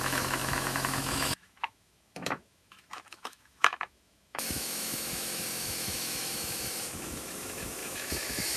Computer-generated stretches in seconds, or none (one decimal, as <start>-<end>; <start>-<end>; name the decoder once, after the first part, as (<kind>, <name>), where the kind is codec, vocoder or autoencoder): 0.0-8.6 (autoencoder, DAC-VAE)